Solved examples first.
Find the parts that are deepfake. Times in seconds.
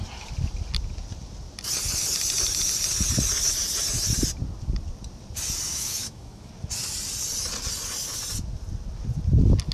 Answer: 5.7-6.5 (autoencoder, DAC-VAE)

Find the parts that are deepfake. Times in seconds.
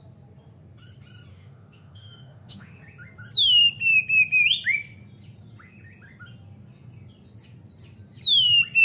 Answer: 1.3-2.8 (autoencoder, DAC-VAE)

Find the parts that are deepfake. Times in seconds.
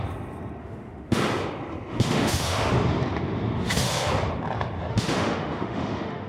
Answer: 0.6-1.2 (autoencoder, DAC-VAE); 1.9-2.7; 3.6-4.1; 4.9-6.3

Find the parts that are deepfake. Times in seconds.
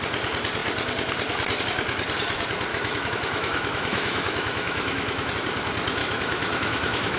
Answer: 2.7-5.3 (autoencoder, DAC-VAE); 6.0-7.2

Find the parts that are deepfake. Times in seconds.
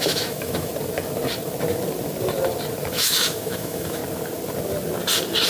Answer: 0.0-0.7 (autoencoder, DAC-VAE); 2.9-4.0